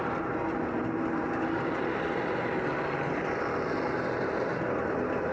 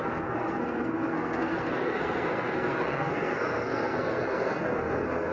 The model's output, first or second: second